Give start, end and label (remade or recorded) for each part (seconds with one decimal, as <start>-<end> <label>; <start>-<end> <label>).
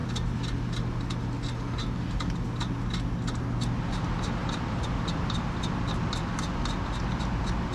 0.0-7.7 recorded